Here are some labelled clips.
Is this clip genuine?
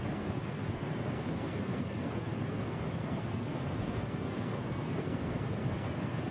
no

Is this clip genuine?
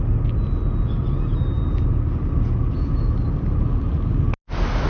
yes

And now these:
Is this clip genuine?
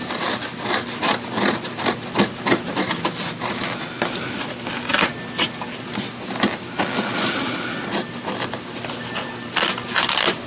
yes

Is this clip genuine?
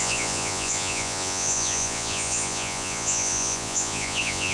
no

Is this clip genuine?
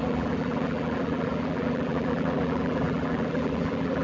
no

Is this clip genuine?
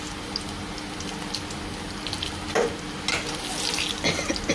yes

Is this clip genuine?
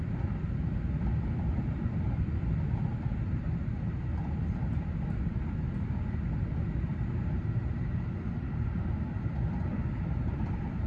yes